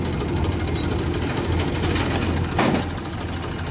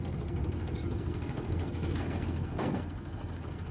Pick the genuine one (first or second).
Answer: first